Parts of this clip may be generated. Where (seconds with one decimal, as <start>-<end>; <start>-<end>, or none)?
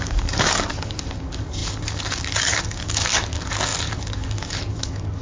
0.0-5.2